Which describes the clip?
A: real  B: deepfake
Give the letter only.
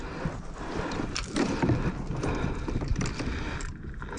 A